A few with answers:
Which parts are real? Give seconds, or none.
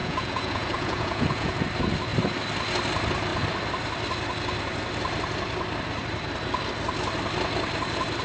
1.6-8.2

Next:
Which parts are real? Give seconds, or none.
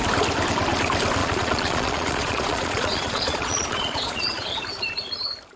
0.0-1.2; 4.6-5.6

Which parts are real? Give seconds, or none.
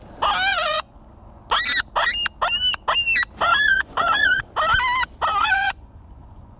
0.0-0.5; 1.4-3.5; 4.4-5.4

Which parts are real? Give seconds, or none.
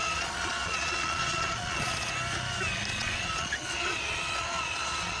2.1-2.9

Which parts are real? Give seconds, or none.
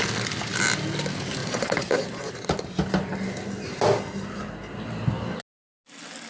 0.0-1.4; 2.5-6.3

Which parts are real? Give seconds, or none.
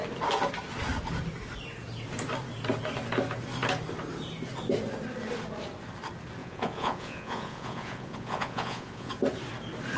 0.0-6.4; 9.1-10.0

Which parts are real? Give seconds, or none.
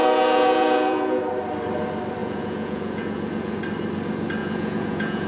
1.2-2.2; 3.6-4.4